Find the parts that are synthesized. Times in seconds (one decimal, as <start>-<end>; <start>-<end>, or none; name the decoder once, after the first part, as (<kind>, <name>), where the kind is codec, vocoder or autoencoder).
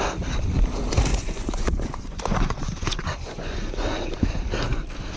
1.1-4.2 (vocoder, Vocos)